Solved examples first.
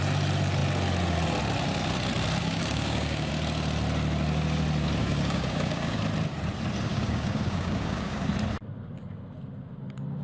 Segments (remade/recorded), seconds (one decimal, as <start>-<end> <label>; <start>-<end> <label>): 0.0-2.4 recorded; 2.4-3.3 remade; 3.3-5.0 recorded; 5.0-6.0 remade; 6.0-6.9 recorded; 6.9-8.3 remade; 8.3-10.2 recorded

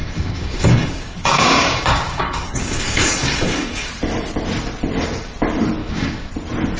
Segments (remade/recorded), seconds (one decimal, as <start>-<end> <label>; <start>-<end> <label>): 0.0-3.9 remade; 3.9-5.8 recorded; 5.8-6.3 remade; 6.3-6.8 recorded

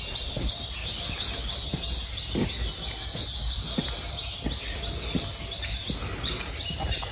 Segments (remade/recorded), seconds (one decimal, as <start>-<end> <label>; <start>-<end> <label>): 0.0-0.8 recorded; 0.8-1.4 remade; 1.4-7.1 recorded

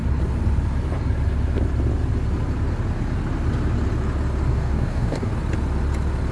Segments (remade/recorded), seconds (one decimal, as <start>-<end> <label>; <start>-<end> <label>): 0.0-4.5 recorded; 4.5-5.3 remade; 5.3-6.3 recorded

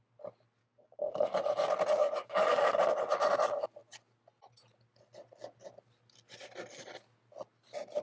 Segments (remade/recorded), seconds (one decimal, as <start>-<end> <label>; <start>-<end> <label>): 0.0-0.6 recorded; 0.6-1.4 remade; 1.4-2.0 recorded; 2.0-2.8 remade; 2.8-8.0 recorded

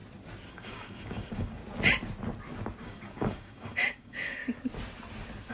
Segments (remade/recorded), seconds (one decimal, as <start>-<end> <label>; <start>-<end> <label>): 0.0-0.5 recorded; 0.5-1.6 remade; 1.6-2.8 recorded; 2.8-4.4 remade; 4.4-5.5 recorded